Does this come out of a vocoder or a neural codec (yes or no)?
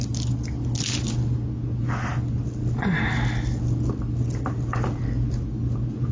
no